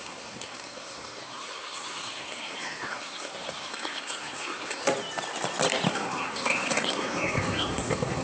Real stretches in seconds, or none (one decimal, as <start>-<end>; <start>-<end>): 4.8-5.9